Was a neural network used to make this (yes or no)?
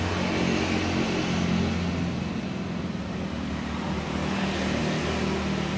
no